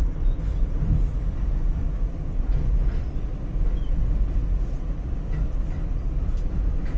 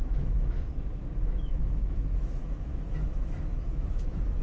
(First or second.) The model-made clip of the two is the second